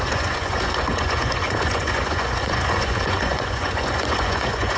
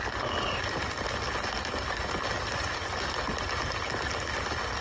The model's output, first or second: first